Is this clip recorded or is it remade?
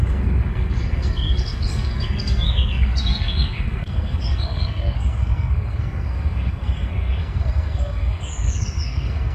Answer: remade